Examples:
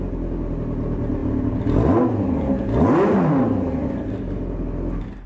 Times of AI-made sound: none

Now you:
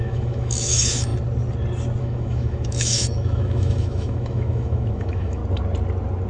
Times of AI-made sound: 0.0-1.1 (autoencoder, DAC-VAE); 2.0-5.4